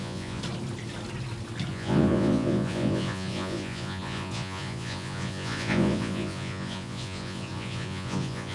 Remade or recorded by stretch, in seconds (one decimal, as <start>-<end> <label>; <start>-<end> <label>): 0.0-0.4 remade; 0.4-1.7 recorded; 1.7-8.5 remade